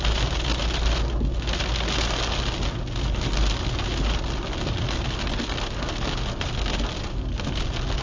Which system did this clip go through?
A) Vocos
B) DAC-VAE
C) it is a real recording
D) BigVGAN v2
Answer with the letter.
C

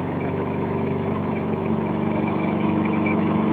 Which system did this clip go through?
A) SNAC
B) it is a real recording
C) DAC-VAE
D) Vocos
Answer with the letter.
C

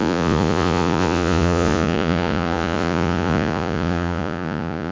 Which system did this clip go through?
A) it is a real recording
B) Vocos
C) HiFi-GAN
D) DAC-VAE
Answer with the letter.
B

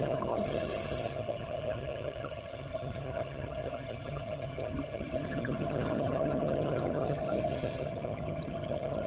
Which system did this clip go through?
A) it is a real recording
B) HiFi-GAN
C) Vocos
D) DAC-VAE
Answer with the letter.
B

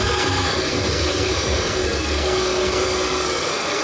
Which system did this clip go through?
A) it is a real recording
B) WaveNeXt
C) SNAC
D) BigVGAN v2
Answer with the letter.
C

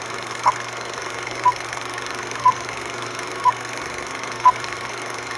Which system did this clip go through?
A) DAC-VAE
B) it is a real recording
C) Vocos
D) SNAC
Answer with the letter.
D